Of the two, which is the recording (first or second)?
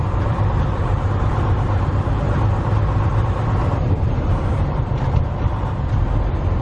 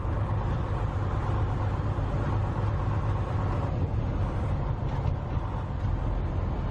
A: second